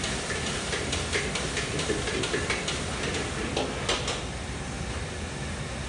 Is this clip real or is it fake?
real